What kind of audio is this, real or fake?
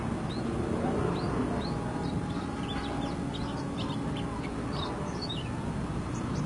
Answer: real